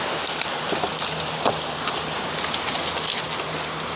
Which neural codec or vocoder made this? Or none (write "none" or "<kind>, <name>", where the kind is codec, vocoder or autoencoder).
none